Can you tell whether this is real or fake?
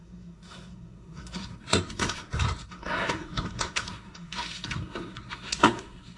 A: fake